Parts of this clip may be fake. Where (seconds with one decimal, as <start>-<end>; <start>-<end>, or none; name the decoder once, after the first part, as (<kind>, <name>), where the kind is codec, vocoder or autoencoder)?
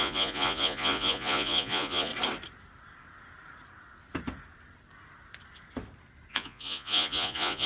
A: 0.0-2.1 (vocoder, Vocos); 6.3-7.7